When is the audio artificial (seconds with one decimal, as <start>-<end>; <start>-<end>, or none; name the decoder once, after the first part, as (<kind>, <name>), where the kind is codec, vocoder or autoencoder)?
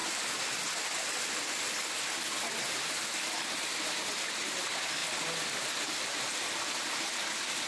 none